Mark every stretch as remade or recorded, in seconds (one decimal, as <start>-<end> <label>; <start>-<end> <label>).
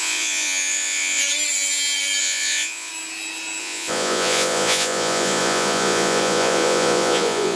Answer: 0.0-1.2 remade; 1.2-2.2 recorded; 2.2-2.9 remade; 2.9-3.6 recorded; 3.6-7.6 remade